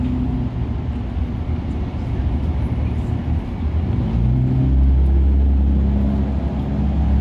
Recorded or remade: recorded